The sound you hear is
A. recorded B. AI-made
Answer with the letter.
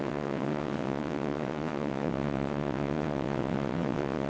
B